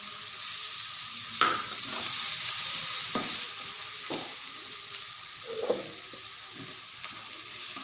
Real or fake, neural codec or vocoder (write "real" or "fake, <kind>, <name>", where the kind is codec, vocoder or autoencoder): real